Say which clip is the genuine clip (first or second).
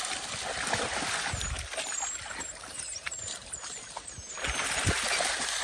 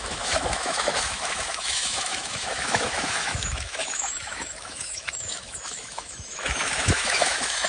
first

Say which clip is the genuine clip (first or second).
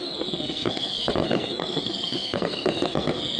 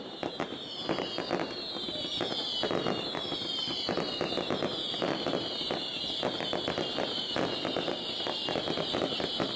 second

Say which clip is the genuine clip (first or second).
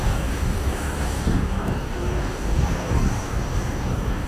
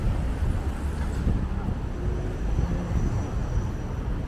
second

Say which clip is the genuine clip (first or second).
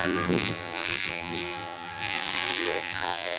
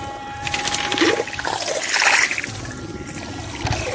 second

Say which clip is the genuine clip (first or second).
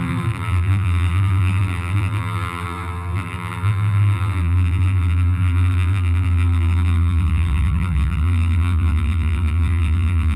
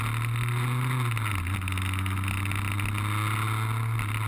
second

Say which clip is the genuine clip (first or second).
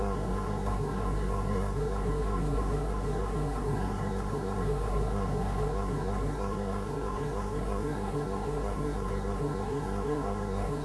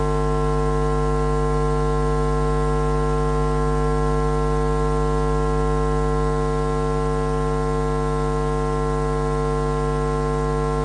second